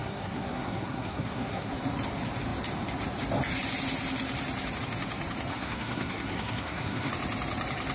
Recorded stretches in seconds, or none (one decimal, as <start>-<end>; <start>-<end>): 1.7-5.5; 7.1-7.9